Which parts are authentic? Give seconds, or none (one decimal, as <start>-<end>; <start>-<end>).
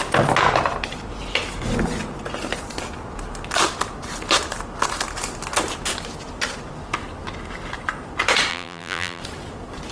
0.0-8.5; 9.2-9.9